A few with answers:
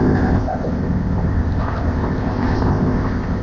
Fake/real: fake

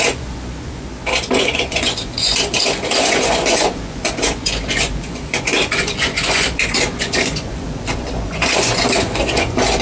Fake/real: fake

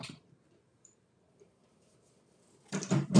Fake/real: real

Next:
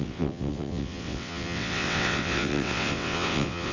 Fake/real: fake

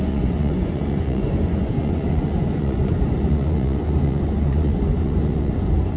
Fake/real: fake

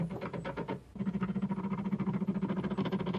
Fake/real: real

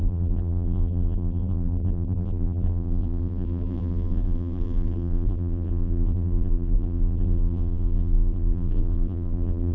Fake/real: fake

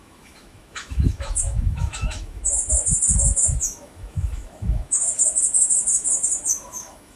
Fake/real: fake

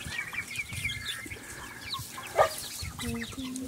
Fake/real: real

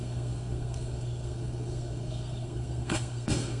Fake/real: fake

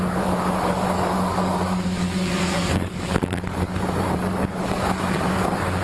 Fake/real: fake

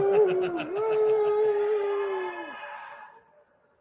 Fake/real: real